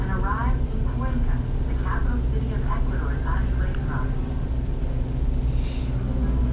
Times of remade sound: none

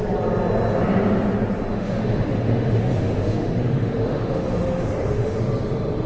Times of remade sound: 1.7-5.4 (autoencoder, DAC-VAE)

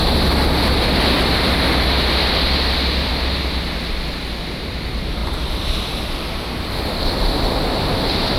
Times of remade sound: none